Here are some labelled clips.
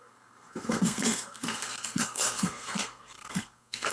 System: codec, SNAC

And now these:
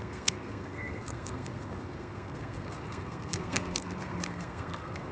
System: codec, SNAC